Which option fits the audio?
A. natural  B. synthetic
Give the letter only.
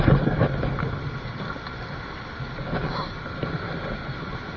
A